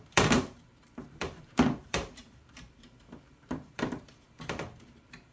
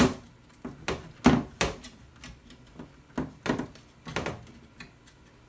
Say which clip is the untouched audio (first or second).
second